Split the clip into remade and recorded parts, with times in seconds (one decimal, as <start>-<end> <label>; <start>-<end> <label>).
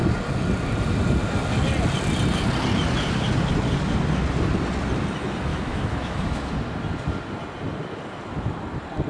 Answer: 0.0-5.5 recorded; 5.5-6.5 remade; 6.5-9.1 recorded